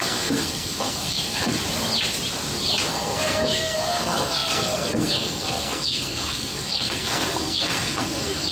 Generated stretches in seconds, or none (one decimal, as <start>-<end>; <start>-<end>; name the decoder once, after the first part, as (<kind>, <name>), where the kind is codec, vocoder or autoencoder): 0.0-1.5 (codec, SNAC); 2.9-8.5